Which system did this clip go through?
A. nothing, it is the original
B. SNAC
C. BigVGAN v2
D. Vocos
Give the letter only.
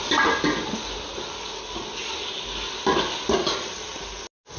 A